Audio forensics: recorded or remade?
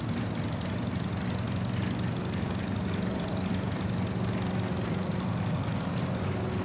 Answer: recorded